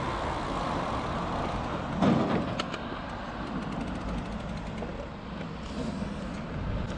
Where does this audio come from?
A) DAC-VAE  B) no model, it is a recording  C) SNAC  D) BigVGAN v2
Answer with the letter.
B